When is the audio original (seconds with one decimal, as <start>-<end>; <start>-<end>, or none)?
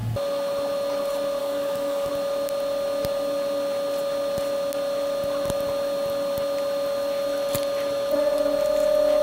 0.0-1.4; 2.1-9.2